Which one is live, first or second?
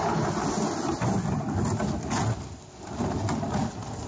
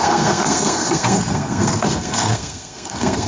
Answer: first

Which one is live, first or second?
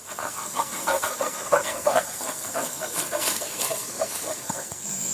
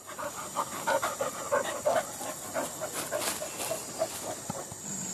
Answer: second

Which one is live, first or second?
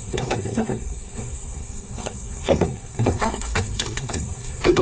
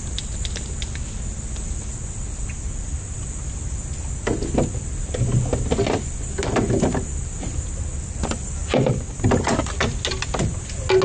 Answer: second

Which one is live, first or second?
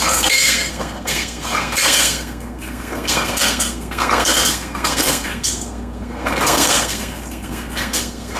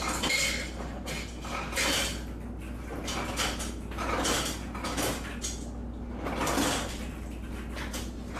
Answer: second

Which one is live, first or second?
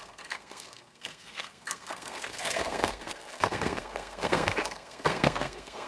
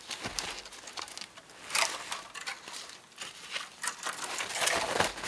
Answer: second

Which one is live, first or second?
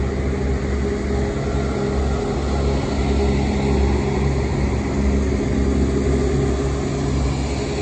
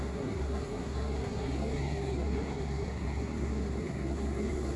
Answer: first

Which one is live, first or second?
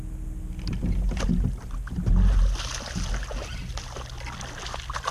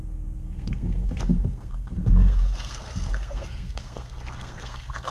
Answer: first